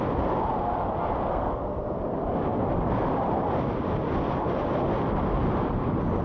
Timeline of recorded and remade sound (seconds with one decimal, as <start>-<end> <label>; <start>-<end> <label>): 0.0-1.3 recorded; 1.3-2.0 remade; 2.0-6.2 recorded